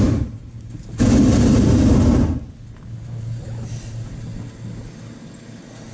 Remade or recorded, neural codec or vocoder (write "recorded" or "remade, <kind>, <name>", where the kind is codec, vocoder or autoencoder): recorded